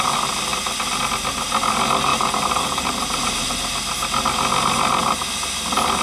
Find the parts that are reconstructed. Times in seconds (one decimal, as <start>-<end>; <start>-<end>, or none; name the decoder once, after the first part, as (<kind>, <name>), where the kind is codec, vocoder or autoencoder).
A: 2.1-3.5 (vocoder, BigVGAN v2)